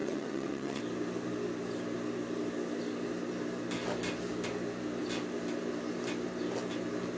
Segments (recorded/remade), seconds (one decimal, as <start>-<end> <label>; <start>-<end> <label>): 0.0-0.8 remade; 0.8-7.2 recorded